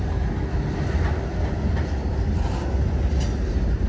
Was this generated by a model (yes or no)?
no